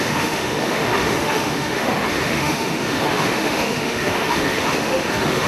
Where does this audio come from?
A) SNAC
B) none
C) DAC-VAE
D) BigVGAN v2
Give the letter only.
C